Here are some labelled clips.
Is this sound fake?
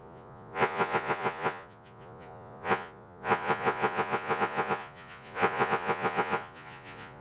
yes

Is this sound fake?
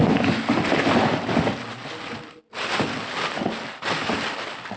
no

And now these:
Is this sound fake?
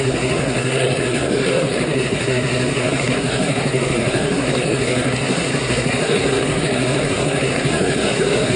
yes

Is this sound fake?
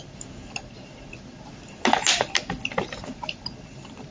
no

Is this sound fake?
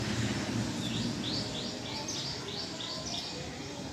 no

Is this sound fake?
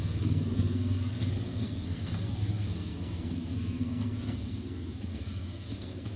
yes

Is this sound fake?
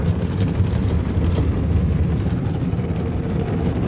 no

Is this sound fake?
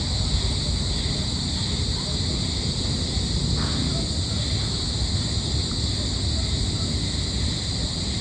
no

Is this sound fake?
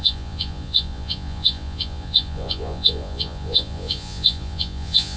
yes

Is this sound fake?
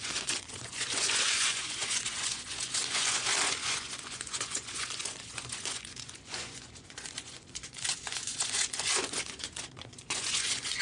yes